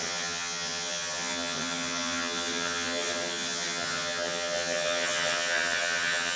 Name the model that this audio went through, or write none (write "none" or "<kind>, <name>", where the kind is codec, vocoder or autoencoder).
vocoder, HiFi-GAN